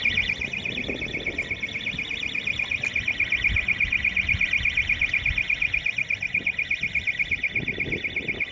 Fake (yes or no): no